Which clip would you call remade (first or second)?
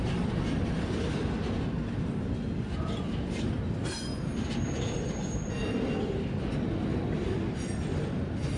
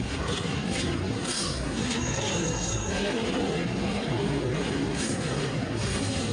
second